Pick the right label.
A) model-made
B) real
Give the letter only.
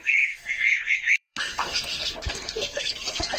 A